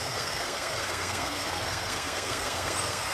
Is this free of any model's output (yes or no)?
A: no